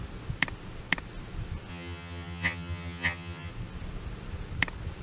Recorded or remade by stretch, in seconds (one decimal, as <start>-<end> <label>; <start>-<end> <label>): 0.0-1.7 recorded; 1.7-3.5 remade; 3.5-5.0 recorded